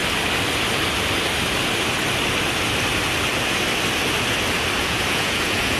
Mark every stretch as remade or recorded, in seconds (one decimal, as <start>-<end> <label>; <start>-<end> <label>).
0.0-4.8 recorded; 4.8-5.8 remade